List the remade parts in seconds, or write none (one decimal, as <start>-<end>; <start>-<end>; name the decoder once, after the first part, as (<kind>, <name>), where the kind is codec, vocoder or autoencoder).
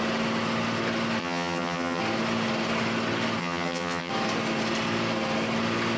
1.2-2.0 (vocoder, HiFi-GAN); 3.4-4.1